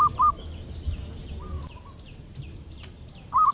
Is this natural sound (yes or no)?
yes